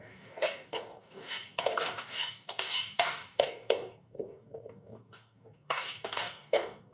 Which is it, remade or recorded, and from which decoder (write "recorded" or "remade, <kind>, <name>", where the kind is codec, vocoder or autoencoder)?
remade, codec, DAC